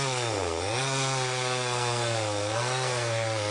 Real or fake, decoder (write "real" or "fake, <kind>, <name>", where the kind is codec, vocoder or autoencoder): fake, codec, SNAC